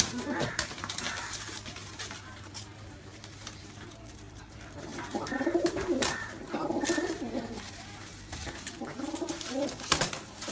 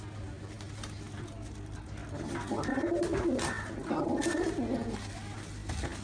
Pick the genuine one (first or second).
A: second